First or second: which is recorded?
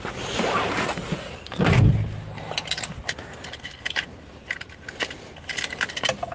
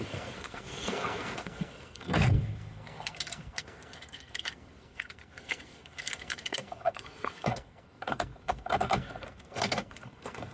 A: first